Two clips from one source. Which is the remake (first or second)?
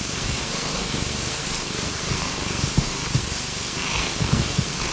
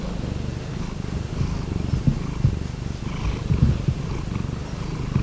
first